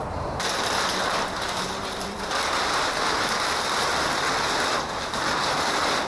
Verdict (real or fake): fake